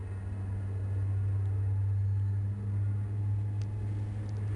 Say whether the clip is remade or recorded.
recorded